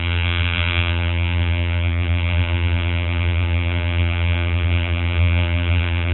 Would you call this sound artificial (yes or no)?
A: yes